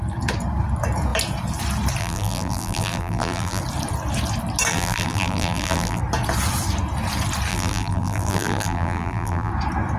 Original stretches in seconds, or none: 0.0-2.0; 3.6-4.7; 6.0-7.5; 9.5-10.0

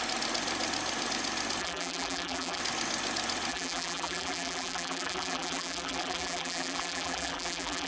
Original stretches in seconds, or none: 0.0-1.6; 2.6-3.5